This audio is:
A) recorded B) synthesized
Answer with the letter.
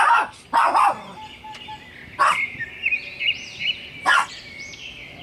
A